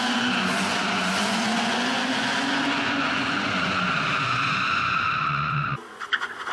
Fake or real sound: fake